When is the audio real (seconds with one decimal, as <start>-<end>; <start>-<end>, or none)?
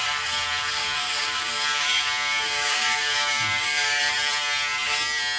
0.0-0.8; 4.0-5.4